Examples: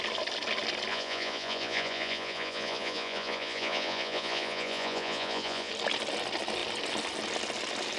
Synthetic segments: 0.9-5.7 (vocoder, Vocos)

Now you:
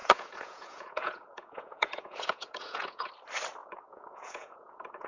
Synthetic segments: 0.0-3.1 (vocoder, Vocos); 3.6-5.1

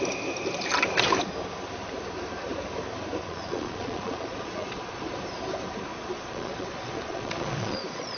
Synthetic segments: 3.2-5.0 (vocoder, Vocos); 5.9-8.2

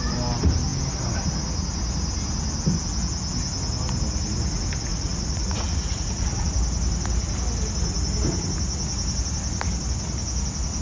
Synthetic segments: 4.9-6.5 (vocoder, Vocos)

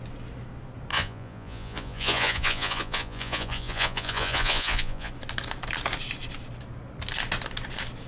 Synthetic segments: 0.9-5.1 (vocoder, Vocos)

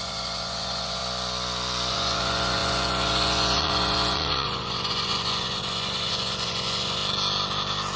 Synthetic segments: 0.0-1.0 (vocoder, Vocos); 1.9-7.0